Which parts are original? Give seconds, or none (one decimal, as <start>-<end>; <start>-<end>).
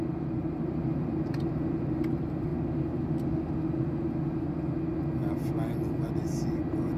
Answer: 2.5-7.0